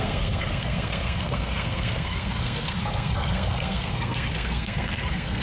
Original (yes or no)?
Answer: no